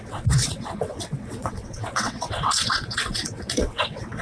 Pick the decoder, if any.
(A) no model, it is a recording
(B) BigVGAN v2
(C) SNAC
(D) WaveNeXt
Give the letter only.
D